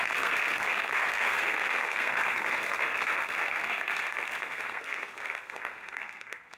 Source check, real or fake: fake